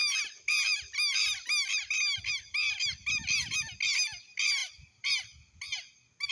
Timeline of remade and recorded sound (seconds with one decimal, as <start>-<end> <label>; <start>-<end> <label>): 0.0-6.3 recorded

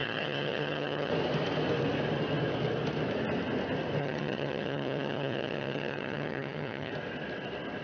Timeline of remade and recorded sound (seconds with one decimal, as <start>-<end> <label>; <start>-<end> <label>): 0.0-1.1 remade; 1.1-4.0 recorded; 4.0-6.9 remade; 6.9-7.8 recorded